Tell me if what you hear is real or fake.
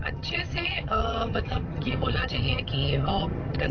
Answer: fake